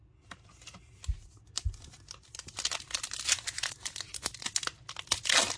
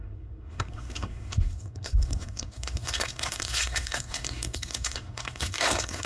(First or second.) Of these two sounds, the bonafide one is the first